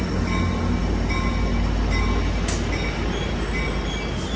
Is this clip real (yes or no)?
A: yes